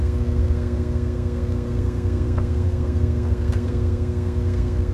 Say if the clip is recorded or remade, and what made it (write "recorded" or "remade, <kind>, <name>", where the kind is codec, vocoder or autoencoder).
remade, codec, SNAC